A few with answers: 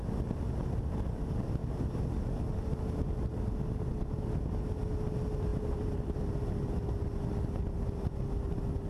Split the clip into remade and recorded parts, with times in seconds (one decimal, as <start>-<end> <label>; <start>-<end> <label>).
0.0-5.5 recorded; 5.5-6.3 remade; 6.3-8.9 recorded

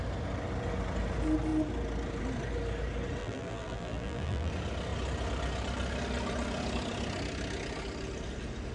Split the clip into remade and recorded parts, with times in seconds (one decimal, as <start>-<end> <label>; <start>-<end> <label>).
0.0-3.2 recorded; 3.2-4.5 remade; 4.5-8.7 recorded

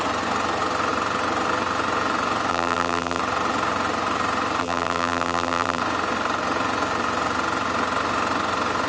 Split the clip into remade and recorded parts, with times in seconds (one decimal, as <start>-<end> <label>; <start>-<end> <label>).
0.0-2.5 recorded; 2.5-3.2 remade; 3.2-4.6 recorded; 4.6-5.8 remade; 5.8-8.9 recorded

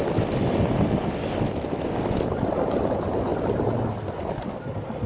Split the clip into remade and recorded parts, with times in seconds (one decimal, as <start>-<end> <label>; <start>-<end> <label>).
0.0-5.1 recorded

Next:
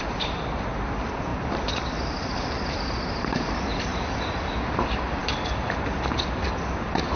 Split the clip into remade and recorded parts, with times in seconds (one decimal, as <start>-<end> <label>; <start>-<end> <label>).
0.0-5.2 remade; 5.2-7.2 recorded

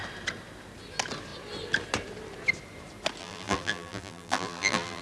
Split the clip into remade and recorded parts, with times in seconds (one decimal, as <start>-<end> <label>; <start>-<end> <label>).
0.0-3.2 recorded; 3.2-5.0 remade